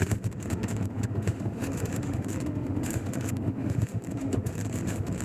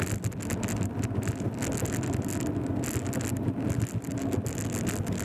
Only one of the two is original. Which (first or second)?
second